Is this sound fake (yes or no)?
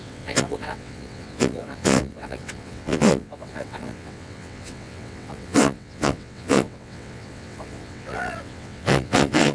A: yes